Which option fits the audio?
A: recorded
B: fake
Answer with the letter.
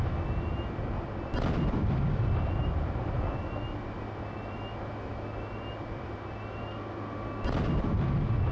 A